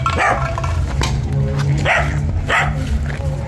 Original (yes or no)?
yes